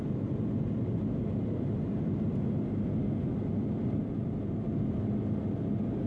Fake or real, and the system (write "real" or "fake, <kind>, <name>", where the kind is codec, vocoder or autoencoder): real